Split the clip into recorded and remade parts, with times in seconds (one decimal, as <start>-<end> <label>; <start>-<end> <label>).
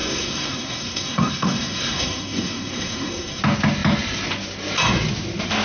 0.0-3.4 remade; 3.4-5.6 recorded